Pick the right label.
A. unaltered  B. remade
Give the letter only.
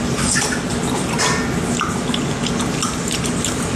A